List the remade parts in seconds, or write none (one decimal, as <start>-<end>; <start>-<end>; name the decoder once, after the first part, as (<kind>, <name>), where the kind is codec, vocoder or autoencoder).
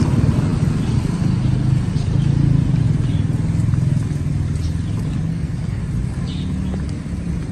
5.3-5.8 (codec, SNAC)